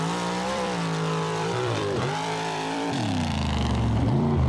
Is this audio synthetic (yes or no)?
yes